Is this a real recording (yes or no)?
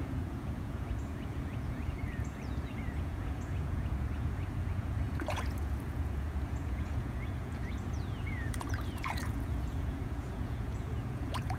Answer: no